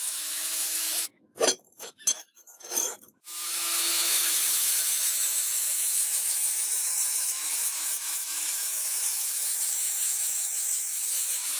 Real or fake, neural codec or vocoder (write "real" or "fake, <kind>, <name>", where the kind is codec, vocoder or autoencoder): fake, autoencoder, DAC-VAE